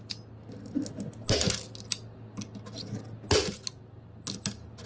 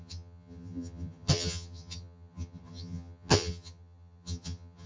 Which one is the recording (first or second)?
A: first